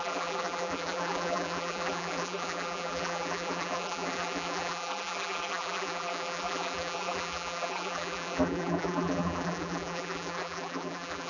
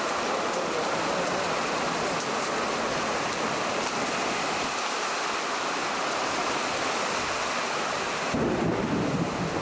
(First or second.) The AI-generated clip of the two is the first